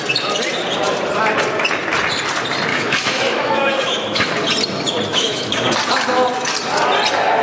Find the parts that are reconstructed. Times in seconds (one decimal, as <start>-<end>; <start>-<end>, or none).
2.7-4.3; 5.1-5.6